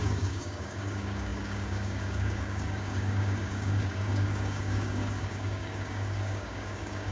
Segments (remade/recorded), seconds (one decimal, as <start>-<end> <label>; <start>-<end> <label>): 0.0-7.1 remade